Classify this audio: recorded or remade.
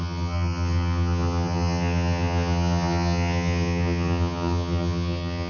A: remade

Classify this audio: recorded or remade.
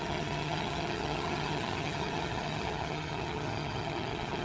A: remade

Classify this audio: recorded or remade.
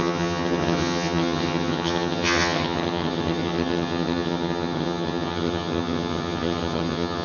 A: remade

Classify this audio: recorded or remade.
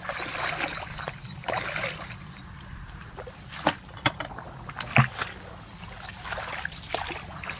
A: recorded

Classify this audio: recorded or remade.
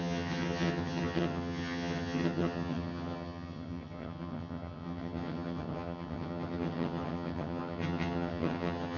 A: remade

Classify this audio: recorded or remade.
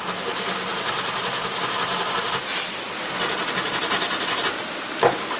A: recorded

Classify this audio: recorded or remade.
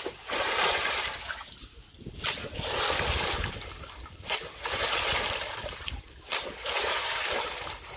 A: recorded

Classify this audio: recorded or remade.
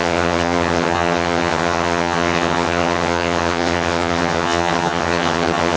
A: remade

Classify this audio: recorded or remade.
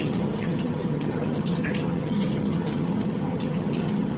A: remade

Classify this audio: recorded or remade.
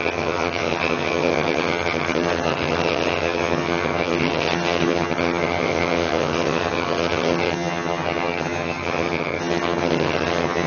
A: remade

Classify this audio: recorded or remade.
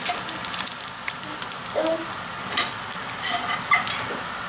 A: recorded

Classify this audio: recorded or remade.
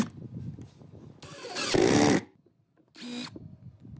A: recorded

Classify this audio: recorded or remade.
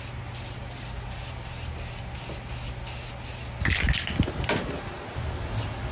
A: recorded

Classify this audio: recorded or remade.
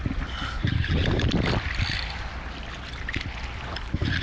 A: recorded